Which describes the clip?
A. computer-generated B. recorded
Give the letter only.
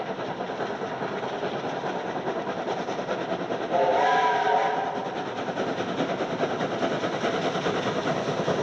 B